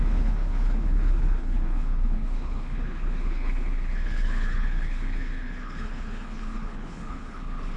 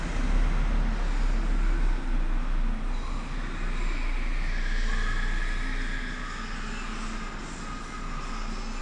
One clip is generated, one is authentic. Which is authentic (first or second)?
second